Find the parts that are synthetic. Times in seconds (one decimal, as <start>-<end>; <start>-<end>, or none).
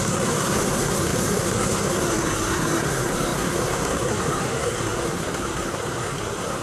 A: 0.0-6.6